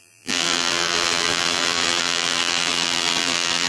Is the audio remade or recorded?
remade